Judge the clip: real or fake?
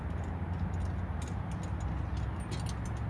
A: real